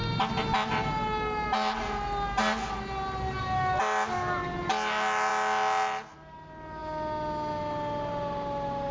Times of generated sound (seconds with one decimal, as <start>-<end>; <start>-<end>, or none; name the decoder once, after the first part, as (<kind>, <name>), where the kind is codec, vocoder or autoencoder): none